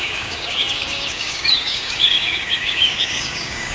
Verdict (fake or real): fake